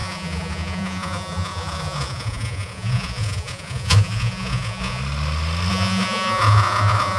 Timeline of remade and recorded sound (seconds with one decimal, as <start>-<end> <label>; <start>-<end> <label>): 0.0-5.0 remade; 5.0-5.7 recorded; 5.7-7.2 remade